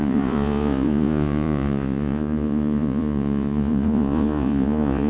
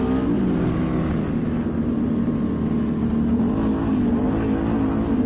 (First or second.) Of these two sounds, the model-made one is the first